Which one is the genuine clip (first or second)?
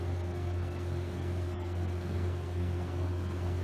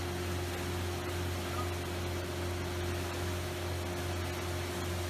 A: second